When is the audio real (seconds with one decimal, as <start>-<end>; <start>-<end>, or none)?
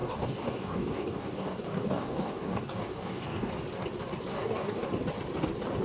3.5-4.3; 4.9-5.8